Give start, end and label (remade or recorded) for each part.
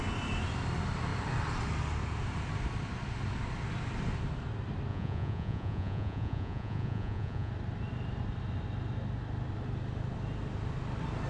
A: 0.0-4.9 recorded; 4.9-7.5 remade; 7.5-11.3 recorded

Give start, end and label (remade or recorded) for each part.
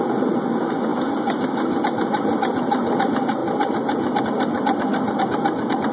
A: 0.0-5.9 recorded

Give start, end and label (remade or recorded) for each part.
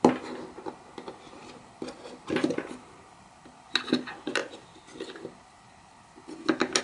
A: 0.0-6.8 recorded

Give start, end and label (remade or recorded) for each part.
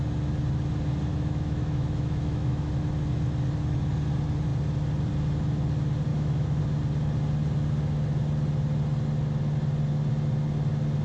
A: 0.0-1.1 recorded; 1.1-2.7 remade; 2.7-6.1 recorded; 6.1-6.6 remade; 6.6-11.0 recorded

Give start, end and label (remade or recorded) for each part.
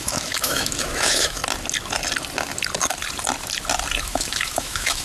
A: 0.0-1.4 remade; 1.4-4.0 recorded; 4.0-5.0 remade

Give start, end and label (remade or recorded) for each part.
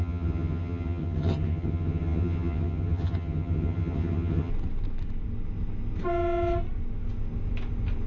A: 0.0-4.5 remade; 4.5-8.1 recorded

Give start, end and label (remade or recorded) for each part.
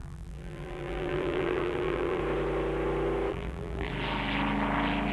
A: 0.0-2.2 remade; 2.2-3.3 recorded; 3.3-3.9 remade; 3.9-5.1 recorded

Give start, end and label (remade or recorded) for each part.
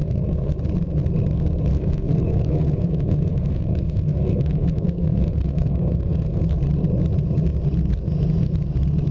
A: 0.0-0.5 remade; 0.5-1.7 recorded; 1.7-6.4 remade; 6.4-9.1 recorded